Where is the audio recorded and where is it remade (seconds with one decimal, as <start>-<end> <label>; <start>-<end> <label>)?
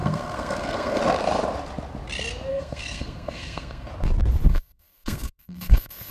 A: 0.0-1.0 remade; 1.0-2.5 recorded; 2.5-3.9 remade; 3.9-4.5 recorded; 4.5-6.1 remade